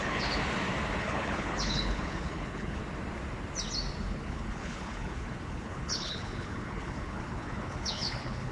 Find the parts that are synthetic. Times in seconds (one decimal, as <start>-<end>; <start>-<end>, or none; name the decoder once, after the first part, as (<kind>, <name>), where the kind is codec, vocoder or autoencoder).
0.0-0.4 (codec, HILCodec); 1.0-2.8; 4.0-8.5